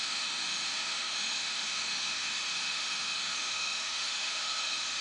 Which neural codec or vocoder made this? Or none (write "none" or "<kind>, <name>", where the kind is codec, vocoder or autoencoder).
autoencoder, DAC-VAE